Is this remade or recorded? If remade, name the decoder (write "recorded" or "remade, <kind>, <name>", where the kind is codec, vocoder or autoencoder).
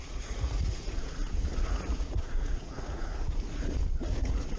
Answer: remade, vocoder, Vocos